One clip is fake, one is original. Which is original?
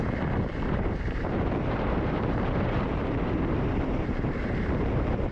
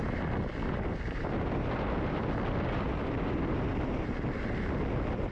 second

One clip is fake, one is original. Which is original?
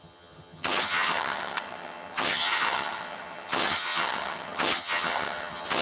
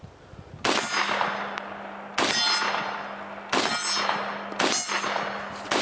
second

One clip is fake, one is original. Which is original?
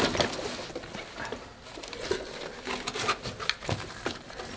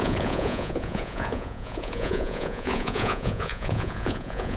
first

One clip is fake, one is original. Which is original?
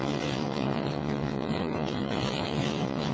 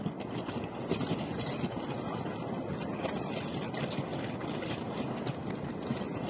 second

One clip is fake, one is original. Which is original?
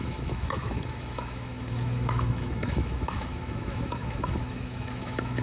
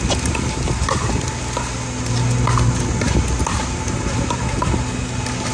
second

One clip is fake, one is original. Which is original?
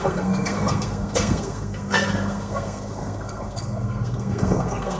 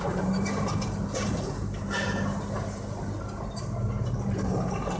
second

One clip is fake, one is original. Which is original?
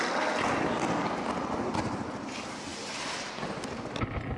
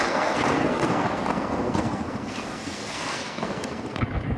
first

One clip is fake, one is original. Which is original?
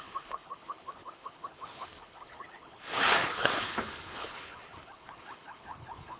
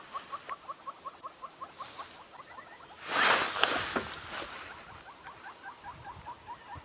second